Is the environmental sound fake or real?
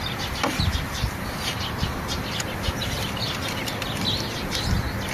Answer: real